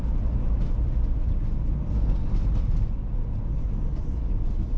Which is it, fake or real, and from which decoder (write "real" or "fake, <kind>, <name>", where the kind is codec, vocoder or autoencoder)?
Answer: real